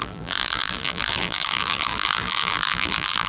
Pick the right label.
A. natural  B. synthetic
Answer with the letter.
B